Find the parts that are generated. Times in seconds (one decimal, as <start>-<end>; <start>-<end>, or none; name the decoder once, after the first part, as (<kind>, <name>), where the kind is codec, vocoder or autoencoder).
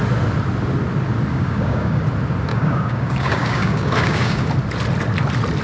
1.3-2.0 (codec, DAC); 2.5-4.5